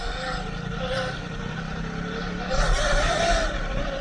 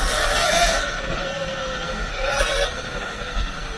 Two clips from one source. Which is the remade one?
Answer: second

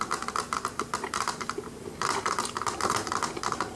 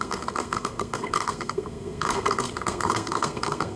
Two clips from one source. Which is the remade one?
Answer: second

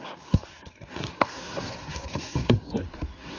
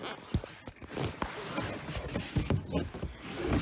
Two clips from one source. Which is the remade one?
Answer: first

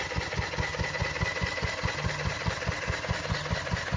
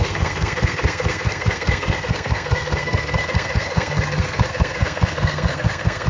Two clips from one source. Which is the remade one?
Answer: second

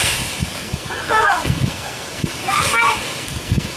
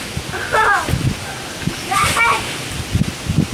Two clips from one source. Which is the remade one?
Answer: first